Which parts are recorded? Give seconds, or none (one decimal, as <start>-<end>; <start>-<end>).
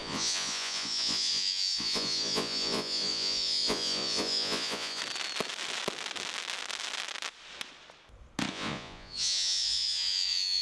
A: 5.0-8.5